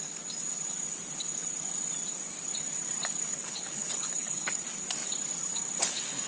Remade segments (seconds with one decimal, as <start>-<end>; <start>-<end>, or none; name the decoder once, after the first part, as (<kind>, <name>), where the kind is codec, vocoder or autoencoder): 3.3-4.6 (codec, HILCodec)